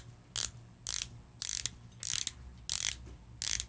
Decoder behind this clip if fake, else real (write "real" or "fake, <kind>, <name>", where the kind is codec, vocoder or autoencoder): real